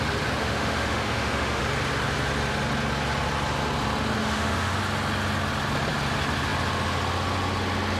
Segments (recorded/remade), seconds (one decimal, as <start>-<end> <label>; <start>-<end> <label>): 0.0-0.4 recorded; 0.4-1.6 remade; 1.6-4.2 recorded; 4.2-4.8 remade; 4.8-8.0 recorded